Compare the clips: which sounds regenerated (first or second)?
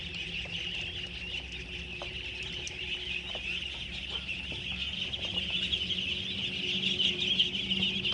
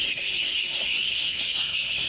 second